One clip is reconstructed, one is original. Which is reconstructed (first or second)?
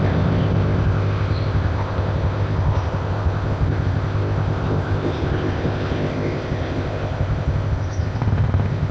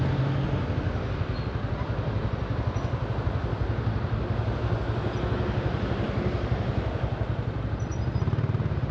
first